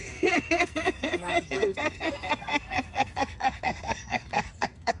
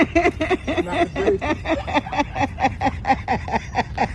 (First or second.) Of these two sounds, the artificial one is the first